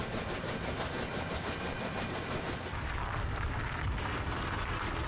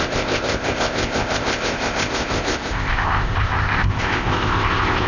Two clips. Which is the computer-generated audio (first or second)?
second